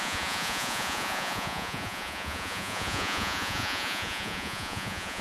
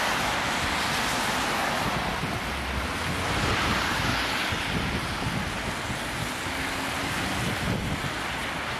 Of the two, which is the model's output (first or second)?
first